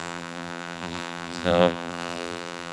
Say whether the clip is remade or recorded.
remade